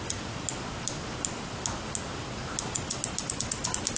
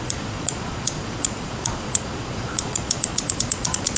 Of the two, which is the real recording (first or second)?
first